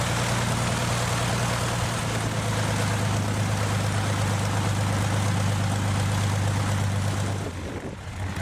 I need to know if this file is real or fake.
real